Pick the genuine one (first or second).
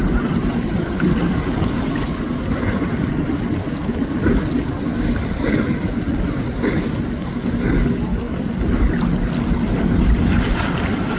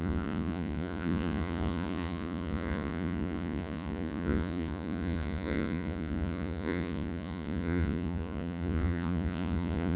first